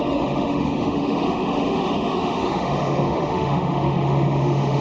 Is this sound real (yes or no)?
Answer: no